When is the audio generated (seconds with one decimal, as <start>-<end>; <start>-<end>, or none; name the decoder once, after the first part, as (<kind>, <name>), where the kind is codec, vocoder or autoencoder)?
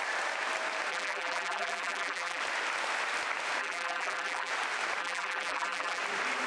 0.9-2.4 (vocoder, BigVGAN v2); 3.6-4.5; 5.0-6.0